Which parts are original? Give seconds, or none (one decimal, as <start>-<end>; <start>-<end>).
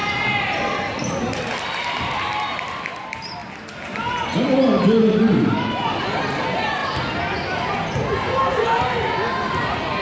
0.0-10.0